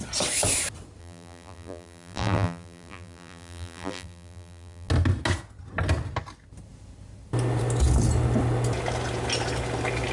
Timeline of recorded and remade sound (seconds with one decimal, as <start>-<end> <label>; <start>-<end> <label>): 0.0-1.0 recorded; 1.0-4.9 remade; 4.9-10.1 recorded